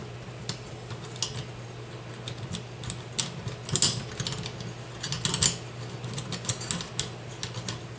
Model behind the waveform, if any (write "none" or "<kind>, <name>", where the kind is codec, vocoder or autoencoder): none